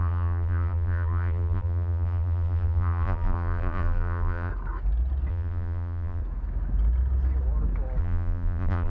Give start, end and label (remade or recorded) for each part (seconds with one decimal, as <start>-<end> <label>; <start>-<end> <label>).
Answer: 0.0-4.5 remade; 4.5-5.3 recorded; 5.3-6.2 remade; 6.2-8.0 recorded; 8.0-8.9 remade